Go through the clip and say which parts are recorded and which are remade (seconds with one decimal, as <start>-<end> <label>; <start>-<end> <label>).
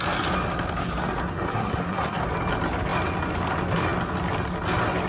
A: 0.0-1.3 recorded; 1.3-2.2 remade; 2.2-5.1 recorded